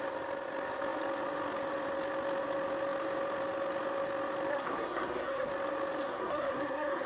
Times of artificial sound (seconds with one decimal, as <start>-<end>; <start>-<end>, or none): 4.5-5.5; 6.0-7.1